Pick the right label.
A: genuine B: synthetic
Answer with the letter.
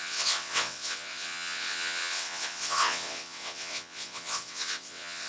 B